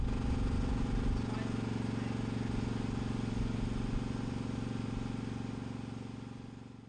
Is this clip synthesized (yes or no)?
no